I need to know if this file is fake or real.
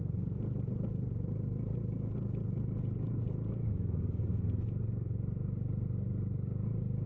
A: real